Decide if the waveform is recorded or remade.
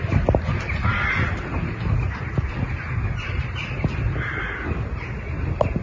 recorded